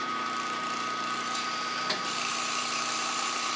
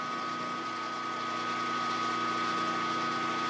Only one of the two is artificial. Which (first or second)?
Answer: first